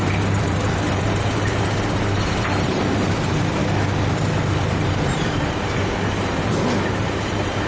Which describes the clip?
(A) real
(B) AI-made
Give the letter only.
B